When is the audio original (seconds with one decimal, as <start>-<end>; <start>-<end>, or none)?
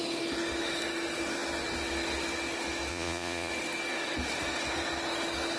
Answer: 0.0-2.9; 3.5-5.6